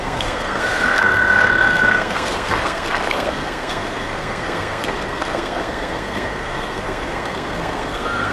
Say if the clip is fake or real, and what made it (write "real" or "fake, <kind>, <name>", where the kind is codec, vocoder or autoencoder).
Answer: fake, codec, SNAC